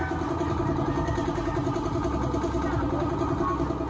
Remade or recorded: recorded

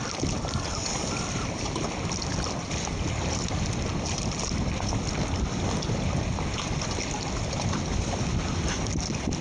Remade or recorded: recorded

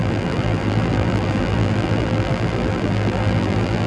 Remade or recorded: remade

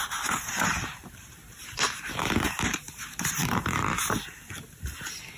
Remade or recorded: remade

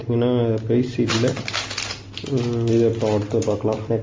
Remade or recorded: recorded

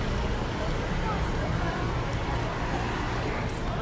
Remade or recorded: recorded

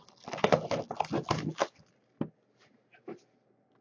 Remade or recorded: recorded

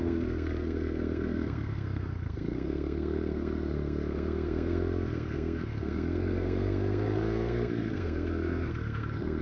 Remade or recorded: remade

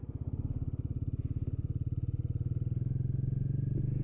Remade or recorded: recorded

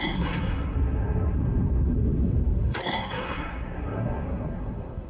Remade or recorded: remade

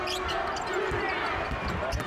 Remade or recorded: recorded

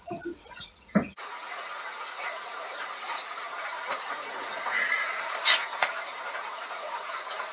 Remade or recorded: remade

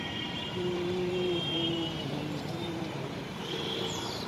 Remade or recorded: remade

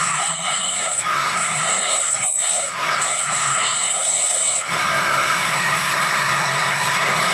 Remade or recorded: remade